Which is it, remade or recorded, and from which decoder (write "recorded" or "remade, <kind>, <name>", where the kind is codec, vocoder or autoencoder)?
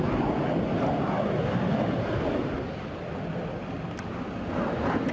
recorded